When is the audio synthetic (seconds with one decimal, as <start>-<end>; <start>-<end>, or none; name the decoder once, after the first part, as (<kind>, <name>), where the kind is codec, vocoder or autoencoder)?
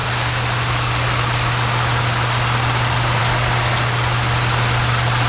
none